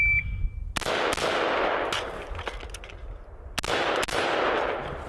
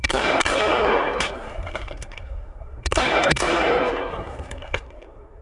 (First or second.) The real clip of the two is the first